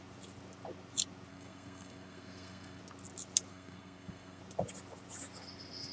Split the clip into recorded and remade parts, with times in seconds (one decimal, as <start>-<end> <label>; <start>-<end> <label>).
0.0-1.3 recorded; 1.3-2.8 remade; 2.8-3.5 recorded; 3.5-4.4 remade; 4.4-5.9 recorded